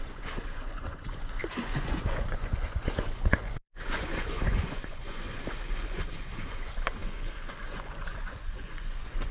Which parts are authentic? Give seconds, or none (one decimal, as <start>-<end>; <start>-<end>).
none

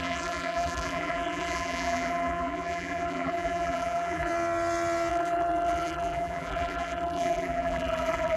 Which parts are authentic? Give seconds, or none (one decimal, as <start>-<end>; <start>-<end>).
4.3-5.1

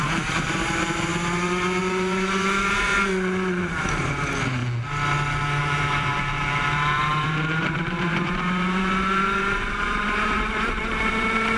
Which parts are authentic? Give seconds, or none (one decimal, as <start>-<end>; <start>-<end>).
1.1-1.8; 2.9-3.6; 4.6-5.6